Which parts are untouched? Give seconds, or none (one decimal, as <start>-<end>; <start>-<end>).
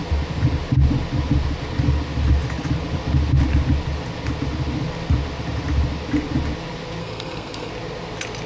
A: 0.0-7.0; 7.7-8.5